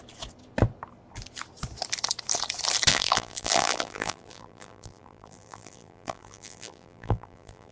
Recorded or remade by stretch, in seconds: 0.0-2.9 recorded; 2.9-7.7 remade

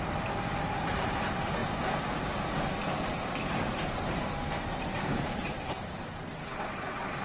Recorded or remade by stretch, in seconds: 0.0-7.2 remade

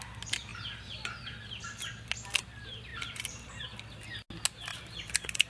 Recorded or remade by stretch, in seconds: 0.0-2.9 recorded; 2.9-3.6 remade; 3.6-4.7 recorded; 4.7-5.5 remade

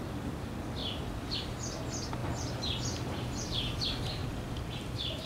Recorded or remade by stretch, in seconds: 0.0-0.8 recorded; 0.8-1.6 remade; 1.6-2.2 recorded; 2.2-3.6 remade; 3.6-4.2 recorded; 4.2-5.3 remade